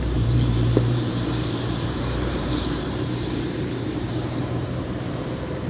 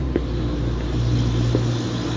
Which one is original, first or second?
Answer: second